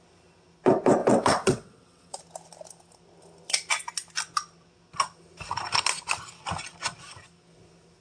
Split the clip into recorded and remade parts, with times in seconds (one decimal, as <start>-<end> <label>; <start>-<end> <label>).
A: 0.0-1.0 recorded; 1.0-2.2 remade; 2.2-8.0 recorded

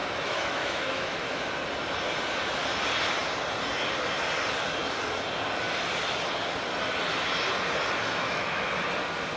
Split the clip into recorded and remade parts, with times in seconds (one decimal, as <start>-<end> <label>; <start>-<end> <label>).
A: 0.0-1.5 remade; 1.5-8.0 recorded; 8.0-8.8 remade; 8.8-9.4 recorded